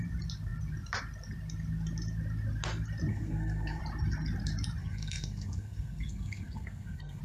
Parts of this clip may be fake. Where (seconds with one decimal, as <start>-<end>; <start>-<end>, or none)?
3.1-3.8; 4.8-7.2